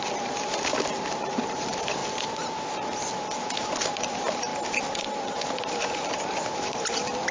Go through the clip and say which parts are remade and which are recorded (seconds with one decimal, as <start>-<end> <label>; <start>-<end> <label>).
0.0-2.0 remade; 2.0-3.9 recorded; 3.9-4.5 remade; 4.5-6.1 recorded; 6.1-7.3 remade

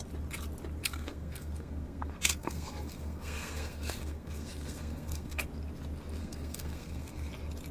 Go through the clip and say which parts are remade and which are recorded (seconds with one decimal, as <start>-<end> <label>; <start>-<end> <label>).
0.0-0.8 recorded; 0.8-5.4 remade; 5.4-6.2 recorded; 6.2-7.3 remade; 7.3-7.7 recorded

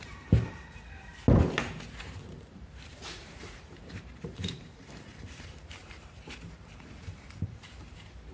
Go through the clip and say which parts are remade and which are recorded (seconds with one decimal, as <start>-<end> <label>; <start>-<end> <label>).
0.0-1.1 remade; 1.1-2.0 recorded; 2.0-8.3 remade